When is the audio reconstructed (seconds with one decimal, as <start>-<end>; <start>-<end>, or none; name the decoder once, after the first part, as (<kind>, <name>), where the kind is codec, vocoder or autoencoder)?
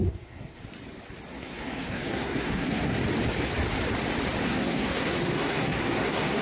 0.0-0.6 (codec, SNAC); 1.3-3.0; 4.4-6.4